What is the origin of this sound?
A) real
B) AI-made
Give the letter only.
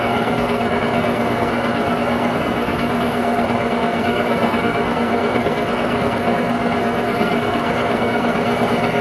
B